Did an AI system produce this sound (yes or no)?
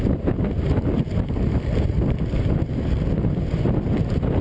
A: no